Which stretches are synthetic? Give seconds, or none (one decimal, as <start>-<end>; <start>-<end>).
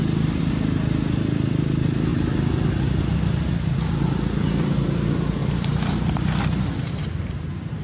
0.0-0.5; 5.4-6.4